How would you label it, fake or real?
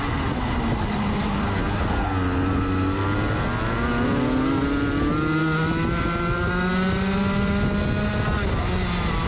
real